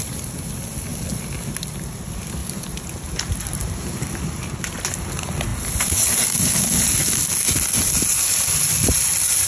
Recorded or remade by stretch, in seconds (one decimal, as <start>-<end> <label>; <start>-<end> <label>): 0.0-9.5 recorded